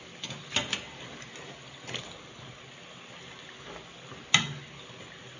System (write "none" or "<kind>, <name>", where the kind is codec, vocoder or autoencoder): none